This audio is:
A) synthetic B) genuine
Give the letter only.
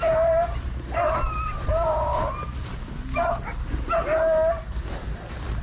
B